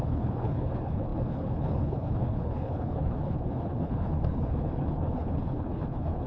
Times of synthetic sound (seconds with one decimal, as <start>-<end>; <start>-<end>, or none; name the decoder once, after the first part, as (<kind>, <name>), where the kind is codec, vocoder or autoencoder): 0.0-6.3 (codec, HILCodec)